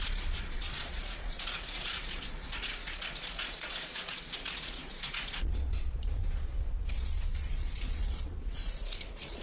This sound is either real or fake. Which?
fake